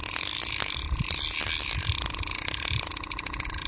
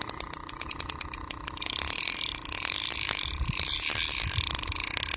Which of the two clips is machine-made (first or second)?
second